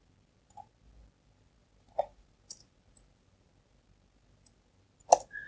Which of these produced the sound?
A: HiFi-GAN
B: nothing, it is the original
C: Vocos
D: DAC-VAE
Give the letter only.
B